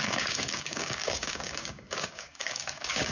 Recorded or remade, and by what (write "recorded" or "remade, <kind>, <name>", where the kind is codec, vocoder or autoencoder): remade, codec, DAC